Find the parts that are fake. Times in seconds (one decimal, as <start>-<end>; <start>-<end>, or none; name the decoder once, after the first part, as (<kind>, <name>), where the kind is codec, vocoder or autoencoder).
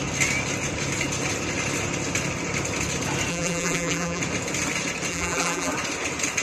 3.3-4.2 (vocoder, BigVGAN v2); 5.1-5.7